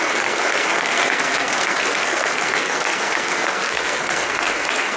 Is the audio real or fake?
fake